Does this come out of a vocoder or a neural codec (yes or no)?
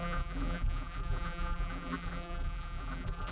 yes